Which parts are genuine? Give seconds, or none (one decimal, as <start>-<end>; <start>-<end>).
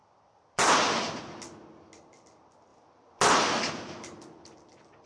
0.0-5.1